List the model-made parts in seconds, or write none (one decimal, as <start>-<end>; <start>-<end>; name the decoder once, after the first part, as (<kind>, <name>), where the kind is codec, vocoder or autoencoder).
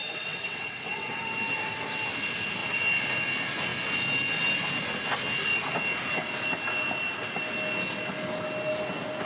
0.0-1.3 (vocoder, WaveNeXt)